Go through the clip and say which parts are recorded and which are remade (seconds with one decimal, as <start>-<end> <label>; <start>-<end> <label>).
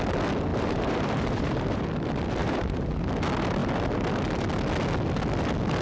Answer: 0.0-0.5 recorded; 0.5-1.8 remade; 1.8-2.4 recorded; 2.4-3.0 remade; 3.0-5.8 recorded